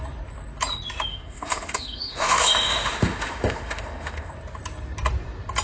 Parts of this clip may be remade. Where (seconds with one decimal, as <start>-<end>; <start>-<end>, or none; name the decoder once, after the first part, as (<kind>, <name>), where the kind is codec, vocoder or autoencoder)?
1.1-4.3 (autoencoder, DAC-VAE)